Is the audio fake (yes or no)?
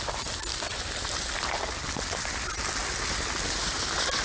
no